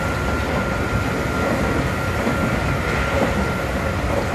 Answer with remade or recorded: recorded